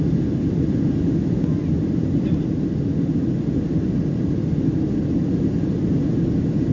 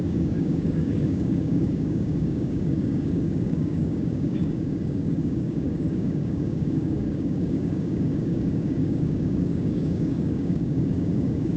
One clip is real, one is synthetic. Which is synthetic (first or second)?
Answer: second